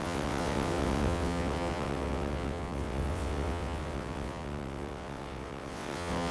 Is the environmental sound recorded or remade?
remade